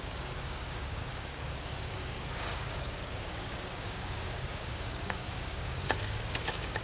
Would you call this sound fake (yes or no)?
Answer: yes